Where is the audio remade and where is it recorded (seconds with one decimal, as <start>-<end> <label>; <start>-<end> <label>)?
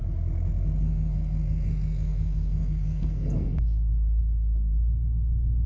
0.0-0.8 recorded; 0.8-5.7 remade